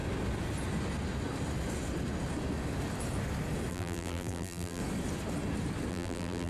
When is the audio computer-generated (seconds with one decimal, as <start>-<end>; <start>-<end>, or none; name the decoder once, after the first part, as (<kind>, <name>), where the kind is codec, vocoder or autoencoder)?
3.7-4.8 (vocoder, BigVGAN v2); 5.9-6.5